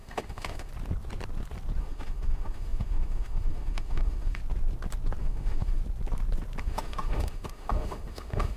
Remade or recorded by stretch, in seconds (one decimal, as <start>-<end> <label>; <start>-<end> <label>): 0.0-0.7 remade; 0.7-1.8 recorded; 1.8-4.4 remade; 4.4-5.2 recorded; 5.2-5.8 remade; 5.8-6.6 recorded; 6.6-8.6 remade